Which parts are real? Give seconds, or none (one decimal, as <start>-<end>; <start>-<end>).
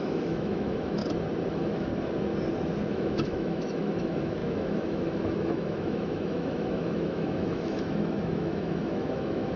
1.0-1.5; 1.9-2.9